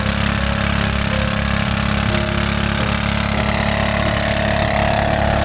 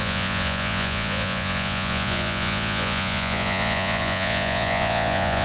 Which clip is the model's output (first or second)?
second